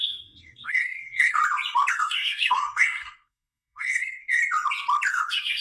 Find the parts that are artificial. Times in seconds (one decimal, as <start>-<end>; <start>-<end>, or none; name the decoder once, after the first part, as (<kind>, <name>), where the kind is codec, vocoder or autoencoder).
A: 0.0-1.4 (codec, SNAC); 1.9-4.4; 5.1-5.6